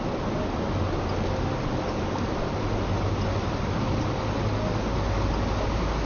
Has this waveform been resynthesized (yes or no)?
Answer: no